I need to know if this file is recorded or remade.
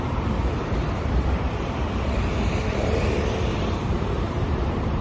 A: remade